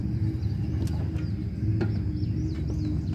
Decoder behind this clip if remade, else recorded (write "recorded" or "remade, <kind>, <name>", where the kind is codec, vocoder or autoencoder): recorded